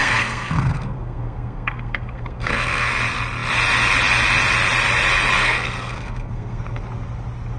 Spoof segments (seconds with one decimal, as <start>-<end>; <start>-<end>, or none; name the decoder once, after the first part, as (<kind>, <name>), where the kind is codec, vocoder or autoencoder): 0.0-2.9 (codec, SNAC); 5.4-6.8